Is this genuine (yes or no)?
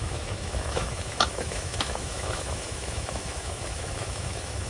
no